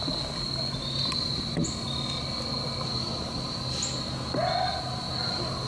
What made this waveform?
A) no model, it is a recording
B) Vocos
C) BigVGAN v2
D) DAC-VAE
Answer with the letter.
A